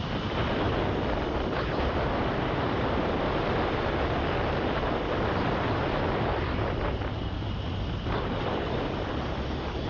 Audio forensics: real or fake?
fake